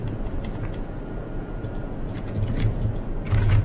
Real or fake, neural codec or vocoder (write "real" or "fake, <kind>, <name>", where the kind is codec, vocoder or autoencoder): fake, vocoder, Vocos